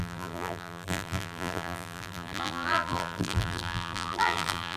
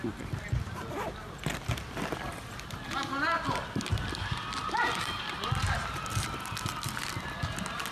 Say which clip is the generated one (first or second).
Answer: first